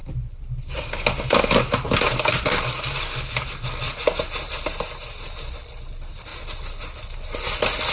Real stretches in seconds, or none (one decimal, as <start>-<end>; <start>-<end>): 0.0-7.9

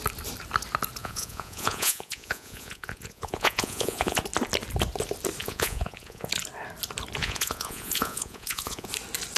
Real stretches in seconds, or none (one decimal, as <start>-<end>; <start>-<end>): 0.0-1.0; 4.2-5.4; 6.3-7.2; 8.9-9.4

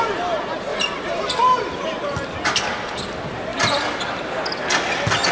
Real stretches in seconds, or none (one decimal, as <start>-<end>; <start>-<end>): 0.0-0.7; 1.2-5.3